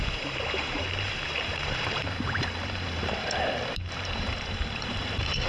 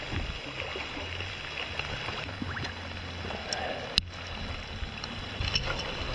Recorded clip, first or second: second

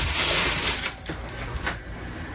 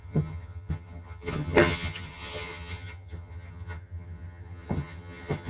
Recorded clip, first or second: first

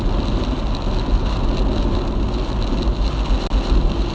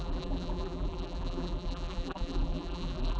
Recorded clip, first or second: first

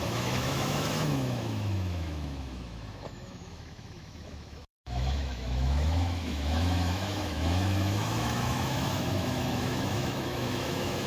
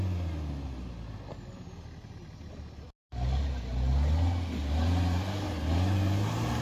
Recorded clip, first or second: second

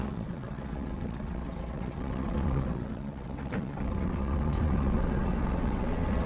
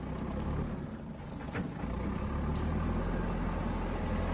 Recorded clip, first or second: second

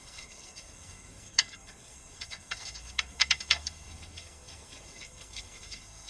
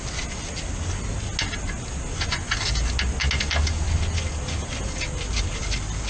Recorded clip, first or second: second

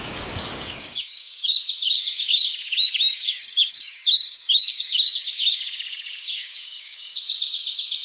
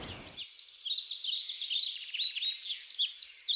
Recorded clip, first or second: second